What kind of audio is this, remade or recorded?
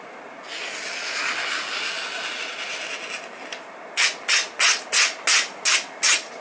recorded